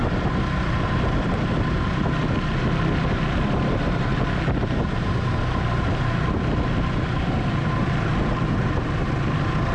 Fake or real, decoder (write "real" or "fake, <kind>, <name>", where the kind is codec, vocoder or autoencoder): real